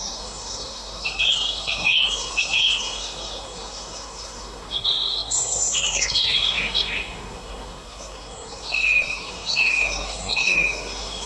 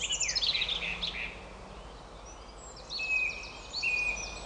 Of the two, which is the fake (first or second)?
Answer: first